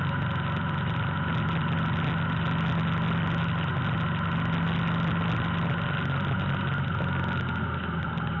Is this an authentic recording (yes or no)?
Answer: yes